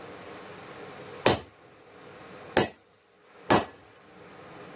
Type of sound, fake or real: real